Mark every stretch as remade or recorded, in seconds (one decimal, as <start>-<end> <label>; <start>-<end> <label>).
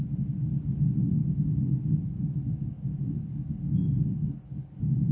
0.0-5.1 recorded